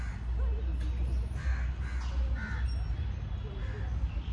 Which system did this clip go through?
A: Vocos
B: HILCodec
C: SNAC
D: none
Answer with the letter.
D